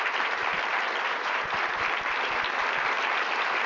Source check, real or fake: fake